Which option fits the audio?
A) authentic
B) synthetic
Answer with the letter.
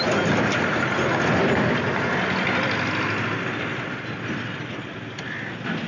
A